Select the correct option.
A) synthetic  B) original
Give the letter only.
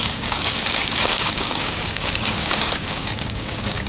A